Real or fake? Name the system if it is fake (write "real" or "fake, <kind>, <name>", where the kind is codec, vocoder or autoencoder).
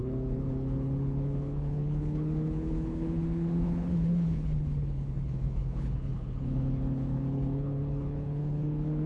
fake, codec, HILCodec